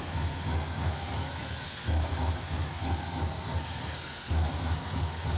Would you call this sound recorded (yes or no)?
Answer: no